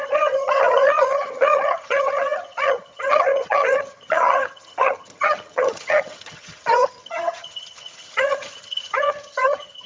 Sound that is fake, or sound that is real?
fake